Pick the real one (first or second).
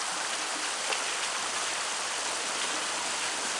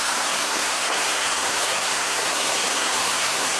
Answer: first